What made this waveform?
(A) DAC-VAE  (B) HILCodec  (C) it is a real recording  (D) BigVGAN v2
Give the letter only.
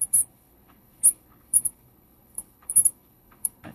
B